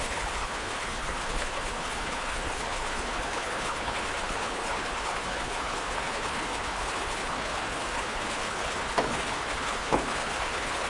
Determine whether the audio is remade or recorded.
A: remade